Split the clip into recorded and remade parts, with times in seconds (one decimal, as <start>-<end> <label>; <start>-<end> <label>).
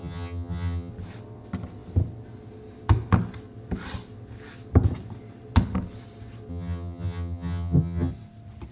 0.0-0.9 remade; 0.9-6.5 recorded; 6.5-8.1 remade; 8.1-8.7 recorded